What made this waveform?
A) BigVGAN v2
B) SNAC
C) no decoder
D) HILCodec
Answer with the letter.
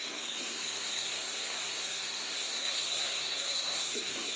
B